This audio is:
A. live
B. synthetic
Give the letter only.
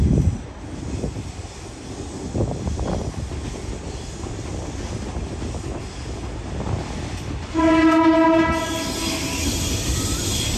A